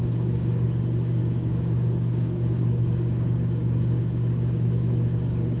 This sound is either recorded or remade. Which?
remade